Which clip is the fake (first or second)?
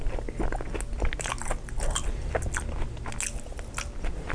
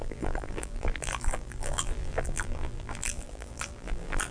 second